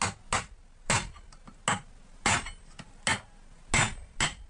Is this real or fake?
real